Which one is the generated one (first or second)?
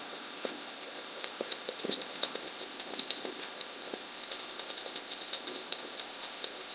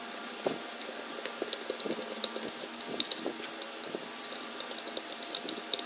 first